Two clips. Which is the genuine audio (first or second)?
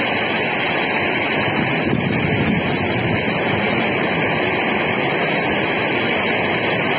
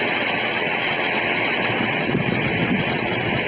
first